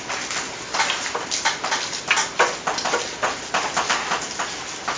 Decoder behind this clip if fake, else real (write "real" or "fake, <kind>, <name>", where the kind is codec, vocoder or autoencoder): real